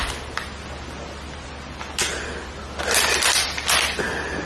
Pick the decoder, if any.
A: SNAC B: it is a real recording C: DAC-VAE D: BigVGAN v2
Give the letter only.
B